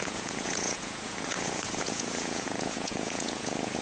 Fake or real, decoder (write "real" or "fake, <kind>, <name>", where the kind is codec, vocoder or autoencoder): fake, vocoder, Vocos